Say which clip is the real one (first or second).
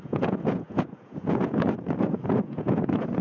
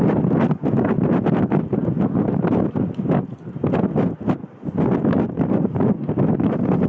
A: second